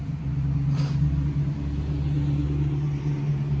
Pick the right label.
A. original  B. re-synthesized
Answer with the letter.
A